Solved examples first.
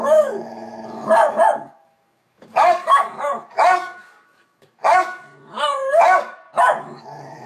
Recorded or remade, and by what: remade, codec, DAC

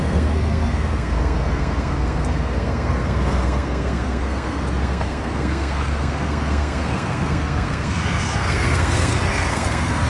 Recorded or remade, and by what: remade, codec, SNAC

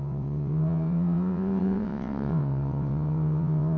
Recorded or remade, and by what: remade, vocoder, WaveNeXt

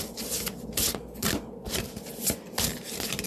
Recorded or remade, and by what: recorded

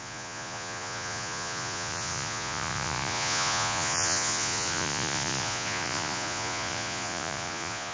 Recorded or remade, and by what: remade, vocoder, Vocos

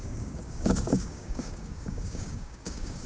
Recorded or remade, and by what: remade, codec, DAC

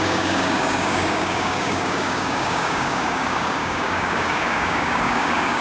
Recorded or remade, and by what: remade, codec, DAC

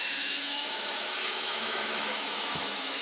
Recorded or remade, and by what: remade, autoencoder, DAC-VAE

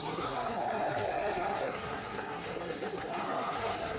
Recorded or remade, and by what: remade, codec, SNAC